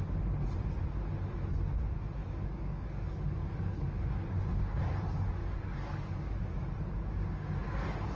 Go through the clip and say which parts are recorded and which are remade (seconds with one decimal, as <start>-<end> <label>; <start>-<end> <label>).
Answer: 0.0-2.2 recorded; 2.2-4.0 remade; 4.0-5.4 recorded; 5.4-6.4 remade; 6.4-8.2 recorded